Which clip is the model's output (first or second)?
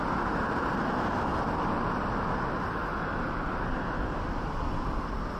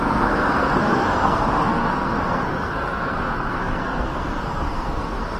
second